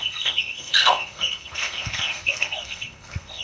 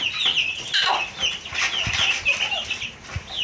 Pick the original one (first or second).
second